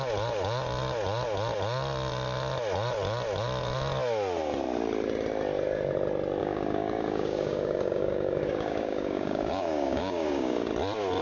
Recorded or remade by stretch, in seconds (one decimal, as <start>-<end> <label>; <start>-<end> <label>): 0.0-6.4 recorded; 6.4-10.7 remade; 10.7-11.2 recorded